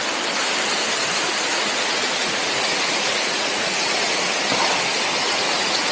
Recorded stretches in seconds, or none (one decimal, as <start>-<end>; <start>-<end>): 0.0-1.5; 4.2-5.2